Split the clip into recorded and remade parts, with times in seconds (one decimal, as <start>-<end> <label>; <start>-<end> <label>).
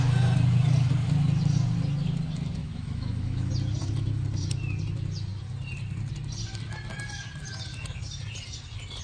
0.0-2.6 recorded; 2.6-3.5 remade; 3.5-9.0 recorded